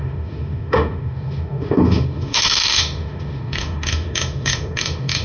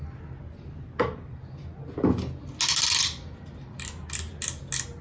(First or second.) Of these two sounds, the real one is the second